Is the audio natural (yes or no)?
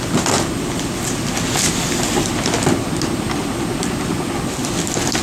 yes